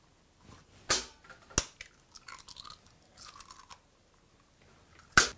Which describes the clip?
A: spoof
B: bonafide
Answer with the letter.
B